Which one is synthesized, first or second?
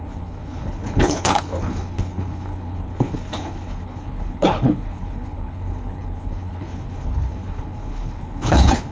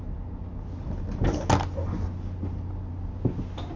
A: first